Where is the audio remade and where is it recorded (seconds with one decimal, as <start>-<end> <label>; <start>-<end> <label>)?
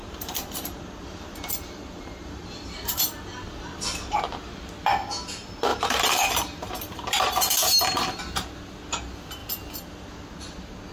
0.0-3.0 remade; 3.0-5.7 recorded; 5.7-8.2 remade; 8.2-10.9 recorded